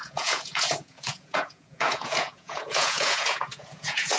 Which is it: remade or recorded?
remade